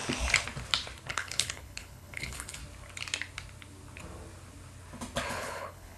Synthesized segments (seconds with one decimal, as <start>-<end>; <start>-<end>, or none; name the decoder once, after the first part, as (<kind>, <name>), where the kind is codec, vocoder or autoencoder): 1.1-2.6 (codec, HILCodec); 5.3-6.0